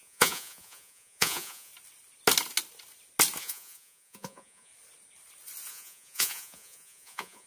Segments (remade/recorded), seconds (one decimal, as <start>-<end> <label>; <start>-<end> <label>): 0.0-1.7 remade; 1.7-3.4 recorded; 3.4-4.7 remade; 4.7-5.7 recorded; 5.7-7.5 remade